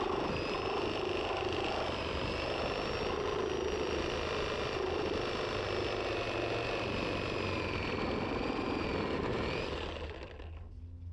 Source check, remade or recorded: recorded